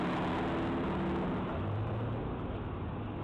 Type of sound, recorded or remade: recorded